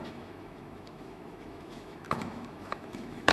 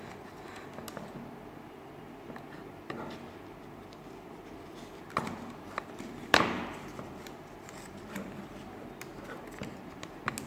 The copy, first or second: first